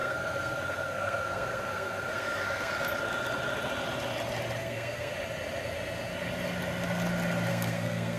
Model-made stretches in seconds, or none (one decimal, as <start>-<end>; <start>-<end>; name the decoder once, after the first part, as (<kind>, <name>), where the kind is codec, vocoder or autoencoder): 0.0-2.7 (codec, SNAC); 4.6-5.1; 7.5-8.2